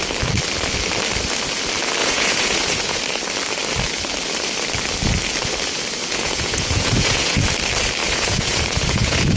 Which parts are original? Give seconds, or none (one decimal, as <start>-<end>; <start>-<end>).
0.0-2.0; 3.0-6.0; 7.5-8.0